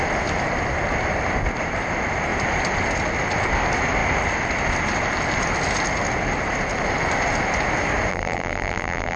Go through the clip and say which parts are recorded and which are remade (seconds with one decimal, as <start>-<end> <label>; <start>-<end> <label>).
0.0-8.1 recorded; 8.1-9.2 remade